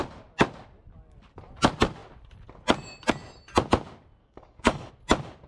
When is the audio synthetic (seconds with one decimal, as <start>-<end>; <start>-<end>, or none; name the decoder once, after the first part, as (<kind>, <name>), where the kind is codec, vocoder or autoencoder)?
4.2-4.9 (codec, DAC)